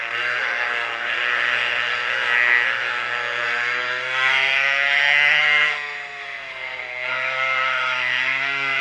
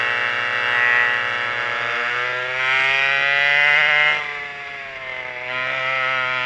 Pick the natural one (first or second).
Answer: second